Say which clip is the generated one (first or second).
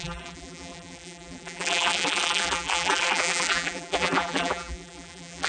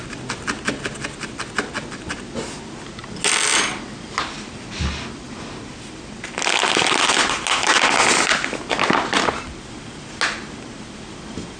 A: first